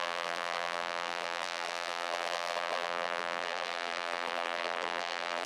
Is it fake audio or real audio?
fake